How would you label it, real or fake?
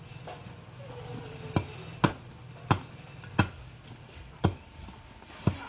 real